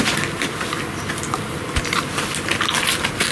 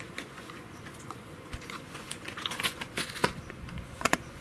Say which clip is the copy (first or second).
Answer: second